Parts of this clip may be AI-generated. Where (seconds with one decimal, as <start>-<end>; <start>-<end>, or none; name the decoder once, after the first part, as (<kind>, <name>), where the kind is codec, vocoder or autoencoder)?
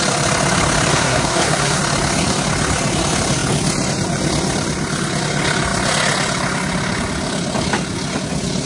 0.9-1.8 (codec, SNAC)